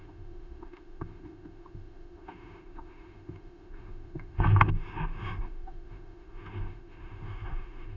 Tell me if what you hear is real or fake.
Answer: fake